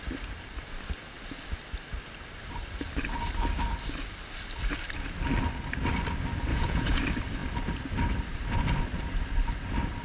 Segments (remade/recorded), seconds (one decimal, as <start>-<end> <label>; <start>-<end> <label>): 0.0-6.5 recorded; 6.5-7.0 remade; 7.0-10.0 recorded